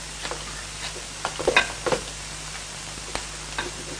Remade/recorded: recorded